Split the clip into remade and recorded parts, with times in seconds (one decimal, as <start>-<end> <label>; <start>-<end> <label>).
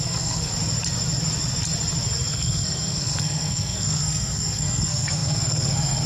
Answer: 0.0-0.5 remade; 0.5-2.3 recorded; 2.3-6.1 remade